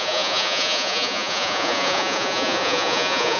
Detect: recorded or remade remade